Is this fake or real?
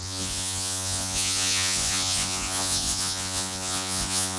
fake